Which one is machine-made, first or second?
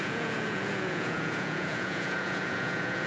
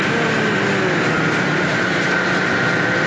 first